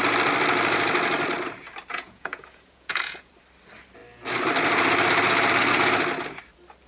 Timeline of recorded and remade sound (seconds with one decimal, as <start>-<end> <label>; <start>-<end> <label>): 0.0-1.9 recorded; 1.9-3.3 remade; 3.3-6.9 recorded